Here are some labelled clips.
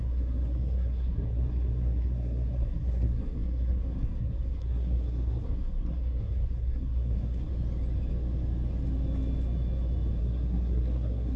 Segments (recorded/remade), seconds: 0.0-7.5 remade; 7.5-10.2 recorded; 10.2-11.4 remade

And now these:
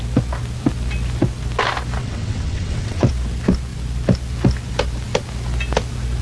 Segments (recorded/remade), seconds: 0.0-2.0 recorded; 2.0-3.1 remade; 3.1-6.2 recorded

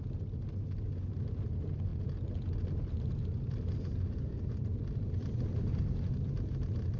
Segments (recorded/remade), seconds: 0.0-7.0 recorded

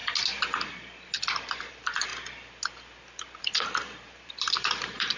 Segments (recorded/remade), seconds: 0.0-1.7 recorded; 1.7-2.1 remade; 2.1-3.4 recorded; 3.4-5.2 remade